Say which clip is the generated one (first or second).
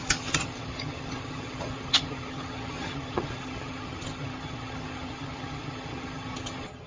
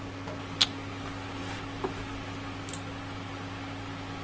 first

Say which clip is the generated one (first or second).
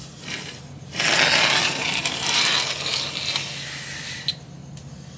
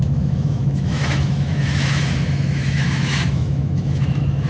second